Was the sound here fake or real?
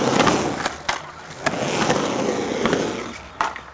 real